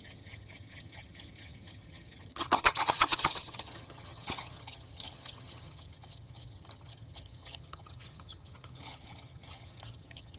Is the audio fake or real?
fake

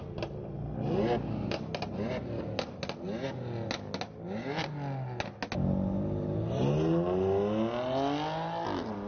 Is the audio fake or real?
real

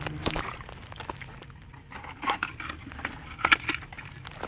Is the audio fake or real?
real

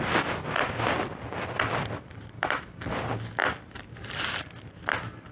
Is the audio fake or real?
real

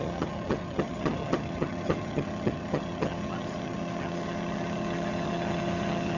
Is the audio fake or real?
fake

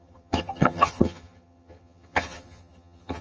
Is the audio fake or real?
fake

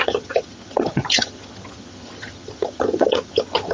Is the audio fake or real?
fake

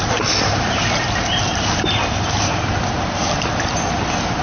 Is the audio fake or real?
real